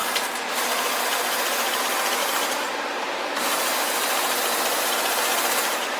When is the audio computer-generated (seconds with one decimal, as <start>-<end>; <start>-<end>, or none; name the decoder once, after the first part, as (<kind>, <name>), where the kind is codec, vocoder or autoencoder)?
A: 0.0-1.8 (vocoder, BigVGAN v2); 2.2-6.0